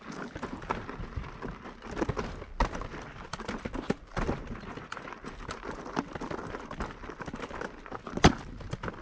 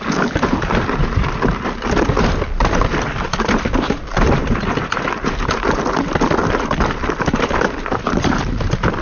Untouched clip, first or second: first